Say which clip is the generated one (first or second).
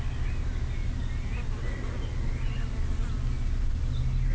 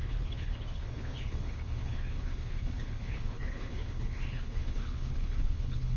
second